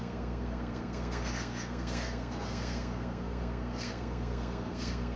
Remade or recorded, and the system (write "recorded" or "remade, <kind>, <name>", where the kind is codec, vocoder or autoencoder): remade, codec, SNAC